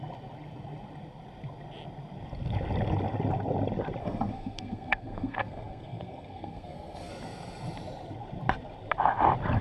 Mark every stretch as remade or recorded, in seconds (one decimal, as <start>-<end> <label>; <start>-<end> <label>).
0.0-4.0 recorded; 4.0-7.1 remade; 7.1-9.6 recorded